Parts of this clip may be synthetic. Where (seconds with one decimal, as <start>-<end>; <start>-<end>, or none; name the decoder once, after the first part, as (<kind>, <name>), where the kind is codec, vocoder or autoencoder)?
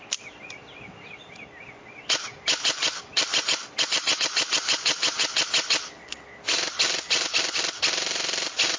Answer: none